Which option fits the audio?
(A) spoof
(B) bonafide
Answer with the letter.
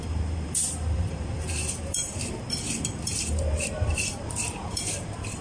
A